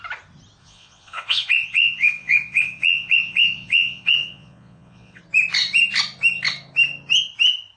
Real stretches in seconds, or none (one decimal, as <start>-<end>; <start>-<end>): 0.0-0.6; 5.2-7.8